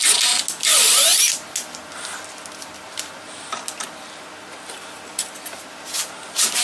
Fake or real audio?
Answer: real